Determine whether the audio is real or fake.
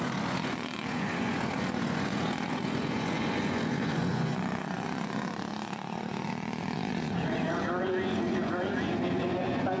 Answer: fake